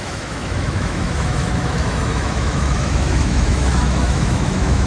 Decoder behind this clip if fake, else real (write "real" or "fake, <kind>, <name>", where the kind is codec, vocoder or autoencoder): fake, autoencoder, DAC-VAE